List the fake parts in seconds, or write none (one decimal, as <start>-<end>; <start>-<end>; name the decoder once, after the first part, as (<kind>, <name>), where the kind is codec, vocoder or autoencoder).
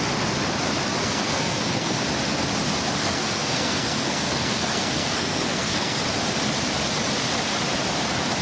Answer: 1.0-2.0 (codec, SNAC); 3.0-6.0